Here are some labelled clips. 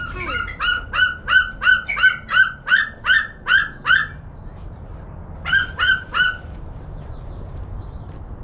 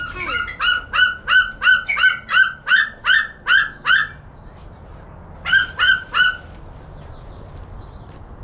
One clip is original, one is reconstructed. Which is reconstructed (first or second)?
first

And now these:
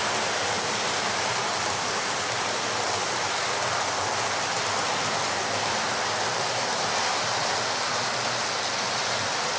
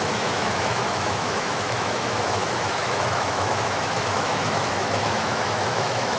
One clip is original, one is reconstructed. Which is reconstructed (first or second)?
second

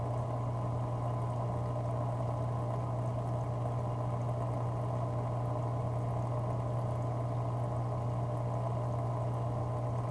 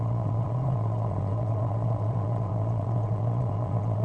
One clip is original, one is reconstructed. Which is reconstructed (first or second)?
second